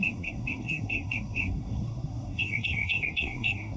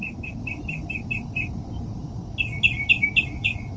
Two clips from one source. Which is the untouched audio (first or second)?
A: second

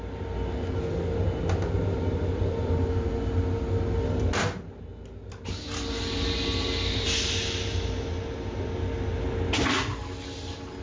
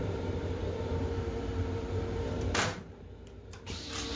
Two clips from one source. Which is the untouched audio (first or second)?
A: first